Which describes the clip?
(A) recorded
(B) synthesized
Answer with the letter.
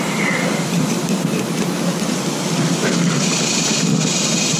B